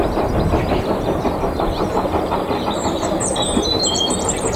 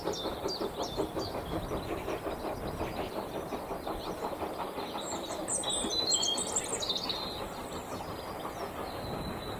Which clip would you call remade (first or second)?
first